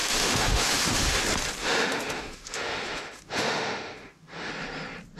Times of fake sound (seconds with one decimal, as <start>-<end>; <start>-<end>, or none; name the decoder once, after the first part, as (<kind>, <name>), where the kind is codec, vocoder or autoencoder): 0.0-1.2 (autoencoder, DAC-VAE); 1.6-4.5

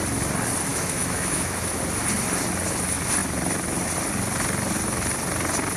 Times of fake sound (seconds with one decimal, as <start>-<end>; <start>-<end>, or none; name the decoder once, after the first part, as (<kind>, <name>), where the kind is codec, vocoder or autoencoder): 0.7-1.8 (autoencoder, DAC-VAE)

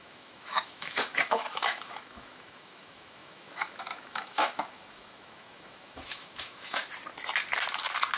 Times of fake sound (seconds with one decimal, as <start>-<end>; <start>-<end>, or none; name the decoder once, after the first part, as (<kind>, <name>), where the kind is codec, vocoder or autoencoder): 0.0-6.8 (autoencoder, DAC-VAE)